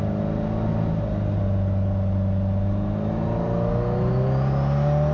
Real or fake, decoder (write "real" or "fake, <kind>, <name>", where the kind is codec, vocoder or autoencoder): real